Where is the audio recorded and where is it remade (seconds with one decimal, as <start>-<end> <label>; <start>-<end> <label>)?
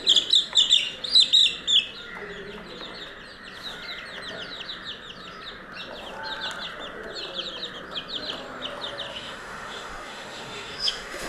0.0-9.1 recorded; 9.1-11.3 remade